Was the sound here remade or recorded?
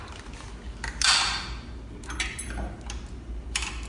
recorded